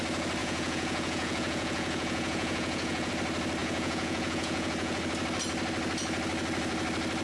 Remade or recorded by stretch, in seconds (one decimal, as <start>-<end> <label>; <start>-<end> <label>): 0.0-0.4 recorded; 0.4-3.1 remade; 3.1-3.6 recorded; 3.6-5.0 remade; 5.0-7.2 recorded